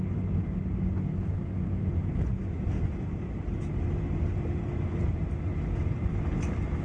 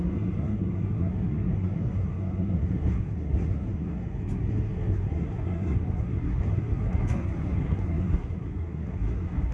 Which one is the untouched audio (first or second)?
first